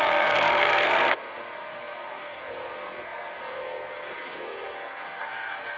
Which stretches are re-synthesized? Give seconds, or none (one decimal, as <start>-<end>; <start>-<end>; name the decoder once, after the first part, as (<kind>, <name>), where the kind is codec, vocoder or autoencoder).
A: 0.0-5.8 (codec, SNAC)